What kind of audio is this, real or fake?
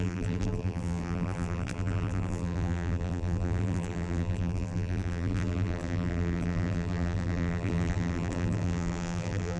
fake